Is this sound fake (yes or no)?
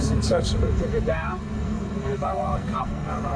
yes